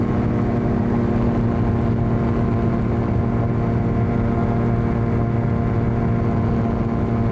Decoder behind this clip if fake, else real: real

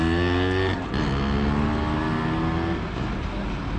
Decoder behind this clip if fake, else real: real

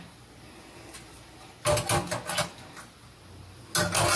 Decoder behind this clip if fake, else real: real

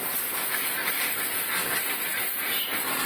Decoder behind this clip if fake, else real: real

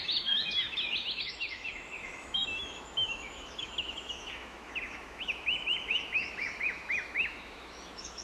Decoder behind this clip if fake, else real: fake, autoencoder, DAC-VAE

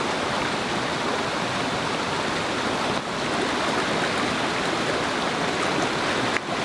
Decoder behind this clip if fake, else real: real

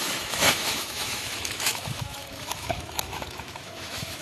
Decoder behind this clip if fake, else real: fake, autoencoder, DAC-VAE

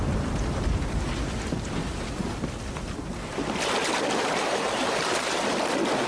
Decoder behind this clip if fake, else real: real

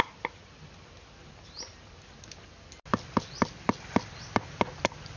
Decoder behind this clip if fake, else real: real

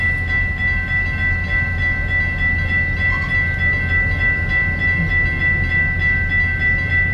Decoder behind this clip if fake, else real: real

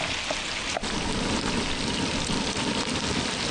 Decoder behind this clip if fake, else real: real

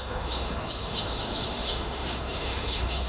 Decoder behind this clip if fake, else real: fake, autoencoder, DAC-VAE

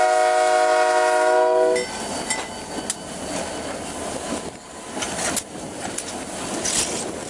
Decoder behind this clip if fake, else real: real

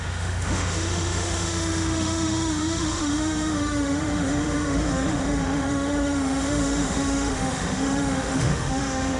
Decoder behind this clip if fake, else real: fake, autoencoder, DAC-VAE